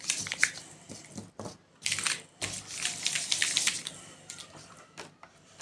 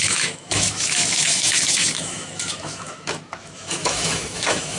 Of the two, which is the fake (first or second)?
second